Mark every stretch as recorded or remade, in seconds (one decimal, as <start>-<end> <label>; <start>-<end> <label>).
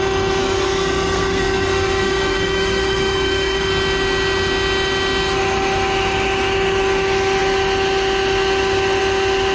0.0-0.4 recorded; 0.4-3.7 remade; 3.7-9.5 recorded